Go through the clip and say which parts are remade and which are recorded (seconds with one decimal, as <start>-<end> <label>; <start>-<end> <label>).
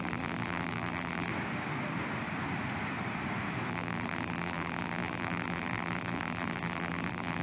0.0-1.3 remade; 1.3-3.7 recorded; 3.7-7.4 remade